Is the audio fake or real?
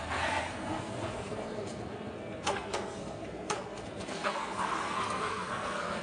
fake